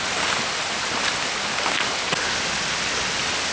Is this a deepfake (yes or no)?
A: no